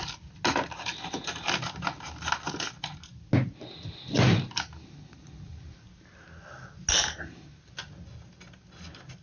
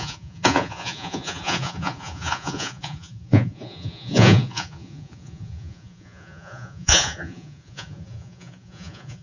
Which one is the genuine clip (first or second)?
first